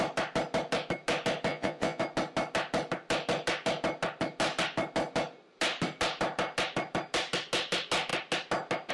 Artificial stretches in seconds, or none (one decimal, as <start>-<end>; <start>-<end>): 1.5-2.0